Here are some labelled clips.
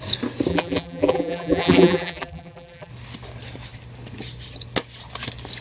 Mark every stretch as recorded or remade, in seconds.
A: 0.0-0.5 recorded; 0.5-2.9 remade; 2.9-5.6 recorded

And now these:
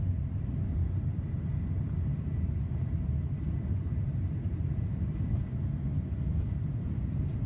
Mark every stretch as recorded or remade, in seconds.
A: 0.0-0.8 recorded; 0.8-5.3 remade; 5.3-7.5 recorded

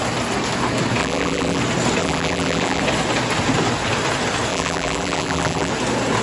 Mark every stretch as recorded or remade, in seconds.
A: 0.0-1.0 recorded; 1.0-1.6 remade; 1.6-2.0 recorded; 2.0-2.8 remade; 2.8-4.5 recorded; 4.5-5.7 remade; 5.7-6.2 recorded

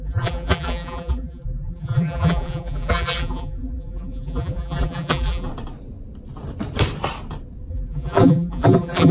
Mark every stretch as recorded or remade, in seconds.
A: 0.0-5.5 remade; 5.5-7.7 recorded; 7.7-9.1 remade

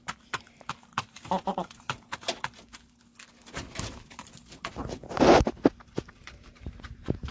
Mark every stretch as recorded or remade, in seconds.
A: 0.0-3.1 remade; 3.1-4.1 recorded; 4.1-7.3 remade

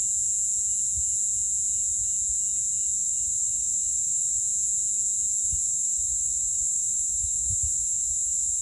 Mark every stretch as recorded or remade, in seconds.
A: 0.0-3.0 recorded; 3.0-4.4 remade; 4.4-5.5 recorded; 5.5-8.6 remade

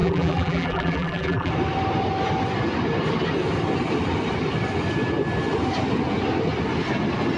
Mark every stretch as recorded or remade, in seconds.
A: 0.0-1.5 remade; 1.5-7.4 recorded

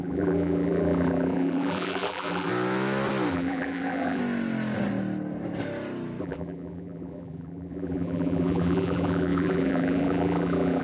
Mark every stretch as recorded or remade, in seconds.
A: 0.0-2.5 remade; 2.5-3.3 recorded; 3.3-4.2 remade; 4.2-6.2 recorded; 6.2-10.8 remade